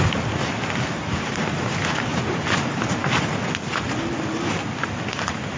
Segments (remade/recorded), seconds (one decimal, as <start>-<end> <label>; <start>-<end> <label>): 0.0-5.6 recorded